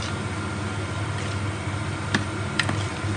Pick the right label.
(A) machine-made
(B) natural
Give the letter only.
B